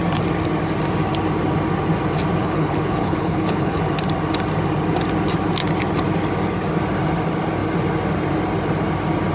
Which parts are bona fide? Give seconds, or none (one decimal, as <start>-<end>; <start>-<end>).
0.0-2.4; 3.8-9.3